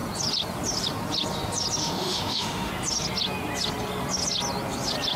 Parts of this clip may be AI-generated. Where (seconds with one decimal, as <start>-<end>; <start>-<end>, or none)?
1.8-2.7